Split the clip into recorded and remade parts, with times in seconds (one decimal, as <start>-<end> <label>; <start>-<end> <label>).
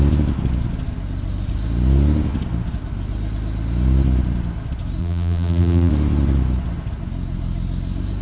0.0-5.0 recorded; 5.0-5.9 remade; 5.9-8.2 recorded